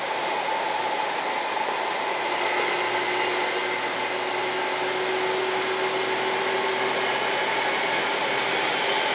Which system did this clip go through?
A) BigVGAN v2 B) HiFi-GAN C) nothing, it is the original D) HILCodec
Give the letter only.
C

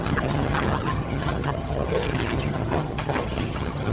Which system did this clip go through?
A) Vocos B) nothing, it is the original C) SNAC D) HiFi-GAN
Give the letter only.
D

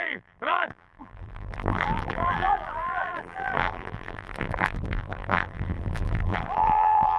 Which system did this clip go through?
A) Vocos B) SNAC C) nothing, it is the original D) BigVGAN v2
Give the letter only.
D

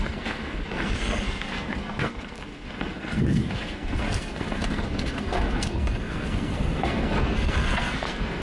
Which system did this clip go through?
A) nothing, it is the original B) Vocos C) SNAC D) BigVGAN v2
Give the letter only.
C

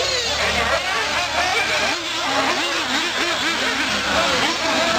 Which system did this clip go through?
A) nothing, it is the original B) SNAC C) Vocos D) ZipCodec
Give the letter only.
A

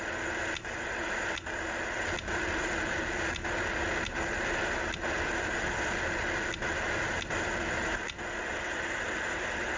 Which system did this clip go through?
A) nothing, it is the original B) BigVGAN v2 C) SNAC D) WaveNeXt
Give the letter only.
A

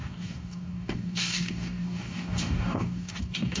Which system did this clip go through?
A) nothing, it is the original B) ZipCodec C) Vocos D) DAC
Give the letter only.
D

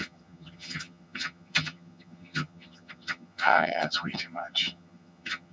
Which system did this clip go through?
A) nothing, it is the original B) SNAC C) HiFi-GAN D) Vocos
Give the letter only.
C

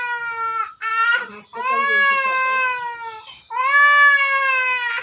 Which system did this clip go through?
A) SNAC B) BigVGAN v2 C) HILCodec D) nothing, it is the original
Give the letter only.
D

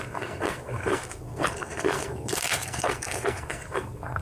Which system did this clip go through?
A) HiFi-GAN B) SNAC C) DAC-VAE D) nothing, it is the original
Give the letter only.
B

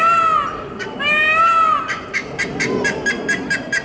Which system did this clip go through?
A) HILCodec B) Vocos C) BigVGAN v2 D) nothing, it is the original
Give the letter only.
D